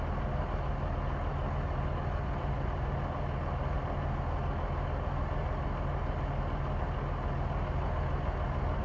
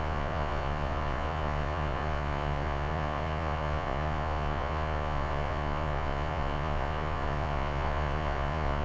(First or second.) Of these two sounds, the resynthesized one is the second